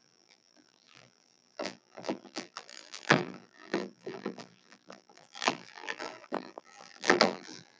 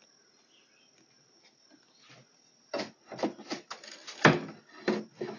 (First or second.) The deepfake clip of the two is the first